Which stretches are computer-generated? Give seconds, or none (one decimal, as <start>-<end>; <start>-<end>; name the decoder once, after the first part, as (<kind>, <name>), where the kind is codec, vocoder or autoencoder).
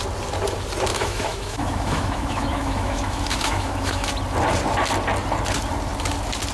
0.9-4.1 (autoencoder, DAC-VAE)